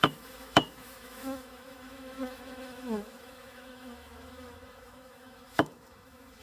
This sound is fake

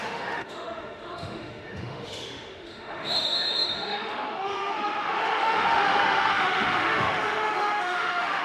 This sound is fake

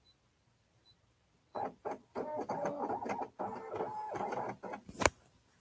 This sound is real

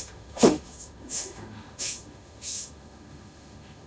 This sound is fake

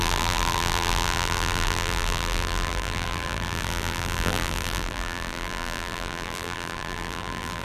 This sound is fake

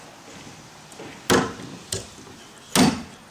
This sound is real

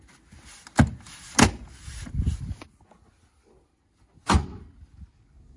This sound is real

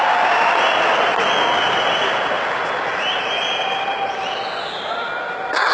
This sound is real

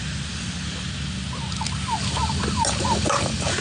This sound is real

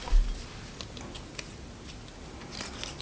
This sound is real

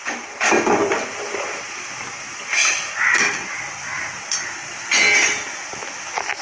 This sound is real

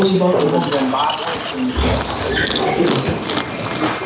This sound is real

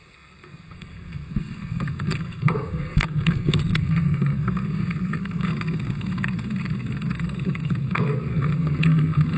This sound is fake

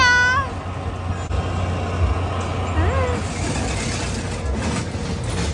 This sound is real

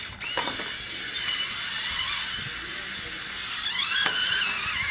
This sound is real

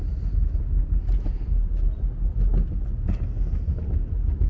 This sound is real